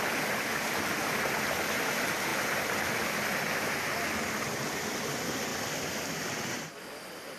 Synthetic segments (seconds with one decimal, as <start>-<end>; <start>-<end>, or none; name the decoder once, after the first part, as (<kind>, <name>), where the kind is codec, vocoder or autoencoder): none